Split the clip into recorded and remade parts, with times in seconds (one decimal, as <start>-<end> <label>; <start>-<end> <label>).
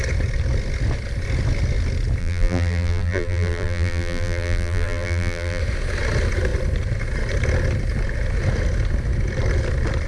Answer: 0.0-2.2 recorded; 2.2-5.6 remade; 5.6-10.1 recorded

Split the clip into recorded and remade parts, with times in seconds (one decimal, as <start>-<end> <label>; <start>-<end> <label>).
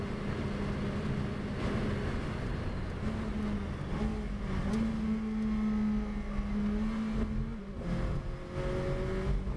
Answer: 0.0-9.6 recorded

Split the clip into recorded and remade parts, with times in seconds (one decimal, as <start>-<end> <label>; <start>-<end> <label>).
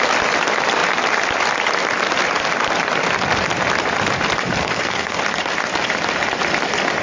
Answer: 0.0-4.6 recorded; 4.6-5.2 remade; 5.2-7.0 recorded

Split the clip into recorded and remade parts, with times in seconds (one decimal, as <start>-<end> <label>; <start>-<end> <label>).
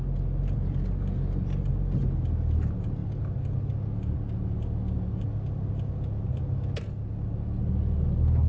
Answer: 0.0-8.5 recorded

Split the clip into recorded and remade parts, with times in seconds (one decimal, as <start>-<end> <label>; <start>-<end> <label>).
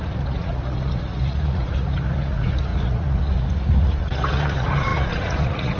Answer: 0.0-5.8 remade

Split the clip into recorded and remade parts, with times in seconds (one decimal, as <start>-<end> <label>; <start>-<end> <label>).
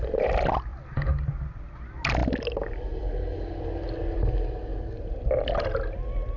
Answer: 0.0-6.4 recorded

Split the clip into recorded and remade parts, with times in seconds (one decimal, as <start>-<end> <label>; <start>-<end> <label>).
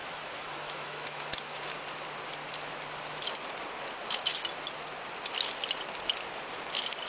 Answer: 0.0-1.6 remade; 1.6-7.1 recorded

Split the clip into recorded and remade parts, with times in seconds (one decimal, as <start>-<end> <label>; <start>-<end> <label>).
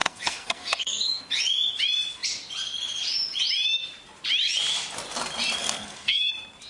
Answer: 0.0-1.2 remade; 1.2-5.6 recorded; 5.6-6.3 remade; 6.3-6.7 recorded